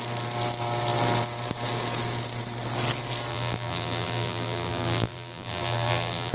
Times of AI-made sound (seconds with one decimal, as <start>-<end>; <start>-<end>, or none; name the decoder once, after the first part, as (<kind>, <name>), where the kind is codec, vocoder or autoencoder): 3.3-6.3 (vocoder, BigVGAN v2)

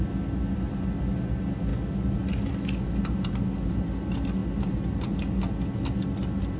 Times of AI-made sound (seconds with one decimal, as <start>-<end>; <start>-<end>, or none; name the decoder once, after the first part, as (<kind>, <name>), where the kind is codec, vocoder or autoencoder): none

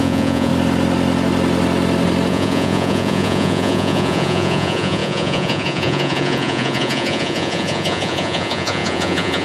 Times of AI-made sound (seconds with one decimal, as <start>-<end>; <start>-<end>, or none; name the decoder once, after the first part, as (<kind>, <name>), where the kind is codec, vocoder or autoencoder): 0.0-0.5 (vocoder, Vocos); 2.3-9.4

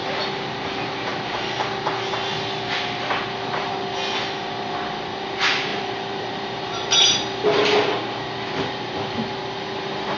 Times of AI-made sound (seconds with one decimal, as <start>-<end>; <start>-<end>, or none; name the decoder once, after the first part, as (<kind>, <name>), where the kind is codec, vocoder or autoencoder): 5.7-6.9 (vocoder, BigVGAN v2)

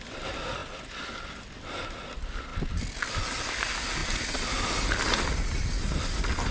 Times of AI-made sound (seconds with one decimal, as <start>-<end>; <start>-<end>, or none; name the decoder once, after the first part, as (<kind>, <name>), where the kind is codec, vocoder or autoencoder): none

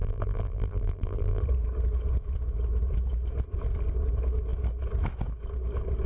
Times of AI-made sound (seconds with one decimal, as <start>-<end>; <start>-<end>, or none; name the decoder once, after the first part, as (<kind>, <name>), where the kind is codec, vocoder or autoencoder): 0.0-1.4 (vocoder, BigVGAN v2)